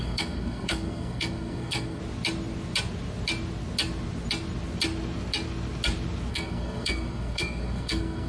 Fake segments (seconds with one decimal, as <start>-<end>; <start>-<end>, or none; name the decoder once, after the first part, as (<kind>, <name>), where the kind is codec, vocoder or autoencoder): 0.0-2.0 (codec, SNAC); 6.3-8.3